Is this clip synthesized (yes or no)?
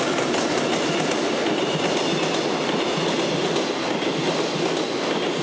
no